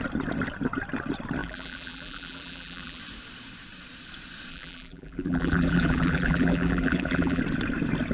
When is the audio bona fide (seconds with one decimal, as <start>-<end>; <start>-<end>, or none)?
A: 0.0-1.4; 3.0-4.5; 7.4-8.1